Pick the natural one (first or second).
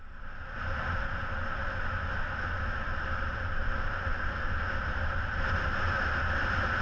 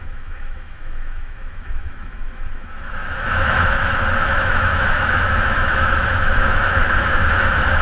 first